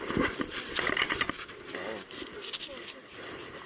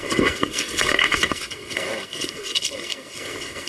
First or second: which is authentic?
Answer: first